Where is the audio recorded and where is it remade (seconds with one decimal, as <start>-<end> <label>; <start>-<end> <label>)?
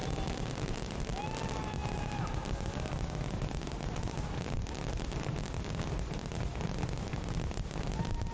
0.0-8.3 recorded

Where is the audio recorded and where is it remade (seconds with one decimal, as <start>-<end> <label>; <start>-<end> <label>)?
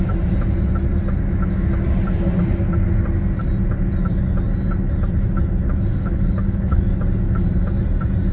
0.0-6.0 recorded; 6.0-6.8 remade; 6.8-8.3 recorded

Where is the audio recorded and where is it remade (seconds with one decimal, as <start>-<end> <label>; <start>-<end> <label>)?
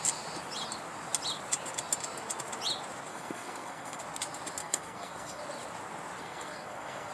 0.0-3.1 recorded; 3.1-4.0 remade; 4.0-4.6 recorded; 4.6-5.4 remade; 5.4-6.2 recorded; 6.2-7.1 remade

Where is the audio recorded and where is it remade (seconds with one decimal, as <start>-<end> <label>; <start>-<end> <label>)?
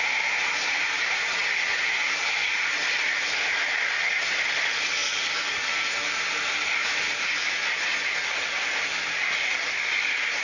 0.0-10.4 recorded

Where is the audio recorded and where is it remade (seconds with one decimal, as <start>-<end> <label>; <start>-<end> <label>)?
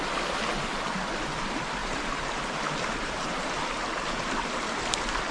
0.0-1.8 recorded; 1.8-3.5 remade; 3.5-5.3 recorded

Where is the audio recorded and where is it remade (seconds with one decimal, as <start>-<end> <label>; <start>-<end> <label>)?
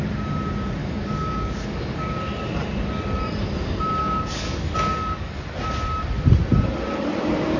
0.0-0.8 recorded; 0.8-2.0 remade; 2.0-4.0 recorded; 4.0-5.4 remade; 5.4-7.6 recorded